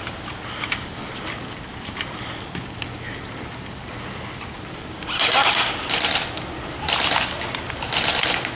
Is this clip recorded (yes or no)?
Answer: yes